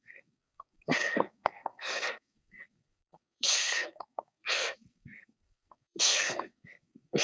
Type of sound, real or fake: fake